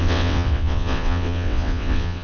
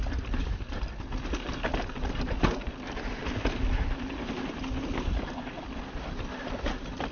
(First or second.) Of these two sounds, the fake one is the first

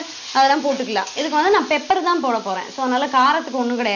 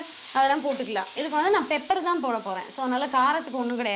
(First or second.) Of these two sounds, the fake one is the second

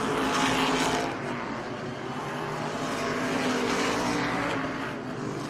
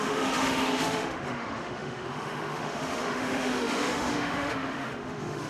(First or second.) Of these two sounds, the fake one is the second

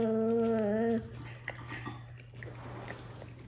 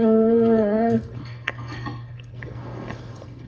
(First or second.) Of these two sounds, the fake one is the second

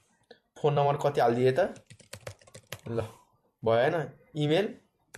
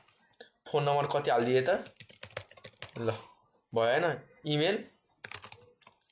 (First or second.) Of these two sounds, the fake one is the first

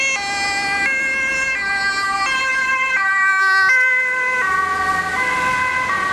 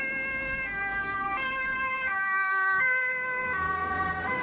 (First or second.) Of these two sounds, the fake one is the second